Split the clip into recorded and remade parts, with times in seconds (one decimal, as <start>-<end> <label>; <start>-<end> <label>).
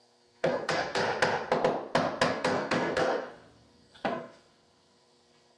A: 0.0-1.0 remade; 1.0-2.3 recorded; 2.3-5.6 remade